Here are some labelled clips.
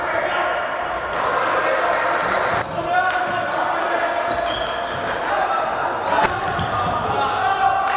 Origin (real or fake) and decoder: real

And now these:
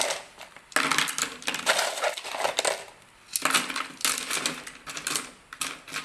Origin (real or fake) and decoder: real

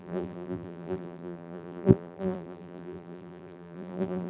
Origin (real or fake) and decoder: fake, vocoder, BigVGAN v2